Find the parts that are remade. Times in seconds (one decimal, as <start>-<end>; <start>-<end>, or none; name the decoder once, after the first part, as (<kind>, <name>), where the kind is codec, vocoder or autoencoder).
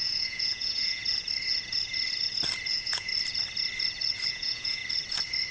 0.0-1.0 (vocoder, Vocos); 2.7-3.1; 4.3-4.8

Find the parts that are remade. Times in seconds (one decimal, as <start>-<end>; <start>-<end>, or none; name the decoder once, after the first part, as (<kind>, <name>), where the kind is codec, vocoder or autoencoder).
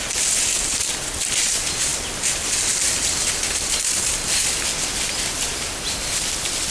none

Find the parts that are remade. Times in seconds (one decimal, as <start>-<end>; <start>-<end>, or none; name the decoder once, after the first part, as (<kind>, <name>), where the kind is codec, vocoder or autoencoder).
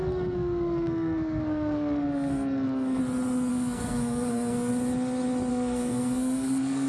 0.0-3.0 (codec, SNAC); 3.5-4.7; 5.5-6.9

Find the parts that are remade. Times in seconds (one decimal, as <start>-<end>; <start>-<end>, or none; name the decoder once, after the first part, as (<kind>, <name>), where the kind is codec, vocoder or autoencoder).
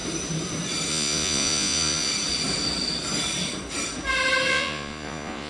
0.9-2.1 (vocoder, Vocos); 4.5-5.5